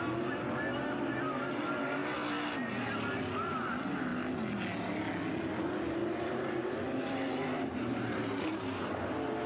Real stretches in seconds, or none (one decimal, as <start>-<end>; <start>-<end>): 0.0-6.0; 8.9-9.5